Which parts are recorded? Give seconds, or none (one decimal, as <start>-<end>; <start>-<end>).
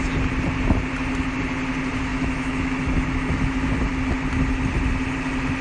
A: 0.0-2.1; 3.5-5.6